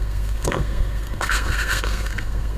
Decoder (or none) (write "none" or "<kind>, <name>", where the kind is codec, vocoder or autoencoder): codec, SNAC